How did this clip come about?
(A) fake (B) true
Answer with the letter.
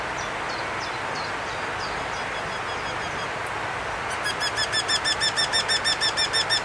B